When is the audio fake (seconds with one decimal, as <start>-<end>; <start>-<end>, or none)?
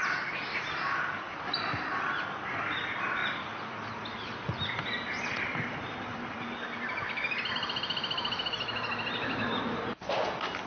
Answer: none